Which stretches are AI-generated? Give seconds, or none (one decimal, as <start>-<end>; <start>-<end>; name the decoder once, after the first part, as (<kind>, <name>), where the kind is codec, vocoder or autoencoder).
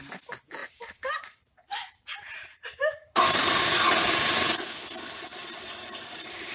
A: 0.6-4.5 (vocoder, BigVGAN v2); 5.3-6.5